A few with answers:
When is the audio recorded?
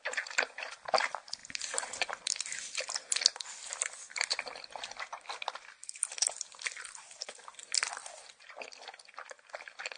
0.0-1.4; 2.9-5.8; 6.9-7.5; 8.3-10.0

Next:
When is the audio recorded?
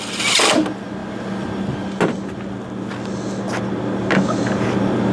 0.0-5.1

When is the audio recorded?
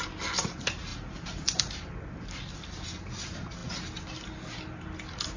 0.0-0.9; 3.1-5.4